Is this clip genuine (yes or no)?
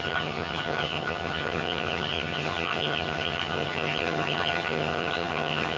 no